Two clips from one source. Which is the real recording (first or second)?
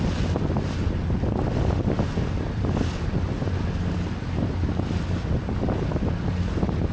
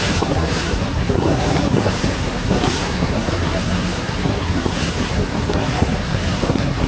first